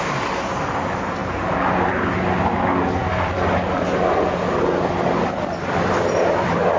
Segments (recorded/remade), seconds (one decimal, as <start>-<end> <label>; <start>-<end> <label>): 0.0-6.8 recorded